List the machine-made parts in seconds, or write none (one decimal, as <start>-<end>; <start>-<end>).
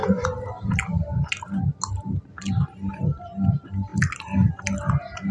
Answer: none